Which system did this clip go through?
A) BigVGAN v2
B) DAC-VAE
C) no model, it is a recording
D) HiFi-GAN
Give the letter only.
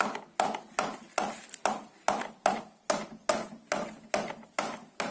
C